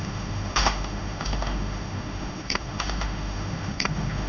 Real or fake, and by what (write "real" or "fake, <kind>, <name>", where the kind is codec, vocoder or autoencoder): fake, autoencoder, DAC-VAE